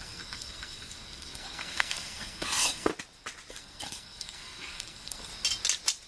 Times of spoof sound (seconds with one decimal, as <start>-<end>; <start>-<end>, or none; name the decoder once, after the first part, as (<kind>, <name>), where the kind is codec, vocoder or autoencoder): 0.0-2.9 (codec, SNAC); 3.5-5.3